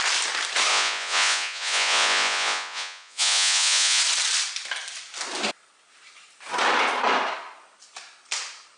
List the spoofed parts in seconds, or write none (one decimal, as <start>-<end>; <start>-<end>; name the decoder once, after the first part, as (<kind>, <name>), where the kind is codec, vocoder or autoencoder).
0.7-4.0 (vocoder, Vocos)